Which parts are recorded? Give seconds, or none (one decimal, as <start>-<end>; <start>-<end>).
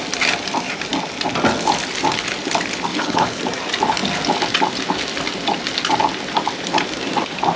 0.0-2.9; 3.4-7.6